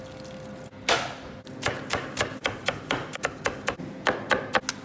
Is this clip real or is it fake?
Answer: real